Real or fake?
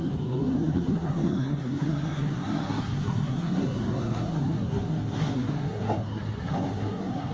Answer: fake